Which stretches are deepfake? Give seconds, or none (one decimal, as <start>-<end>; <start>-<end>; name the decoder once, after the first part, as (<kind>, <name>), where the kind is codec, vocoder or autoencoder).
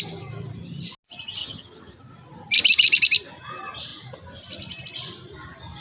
1.4-2.0 (vocoder, HiFi-GAN)